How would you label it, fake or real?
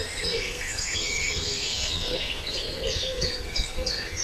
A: fake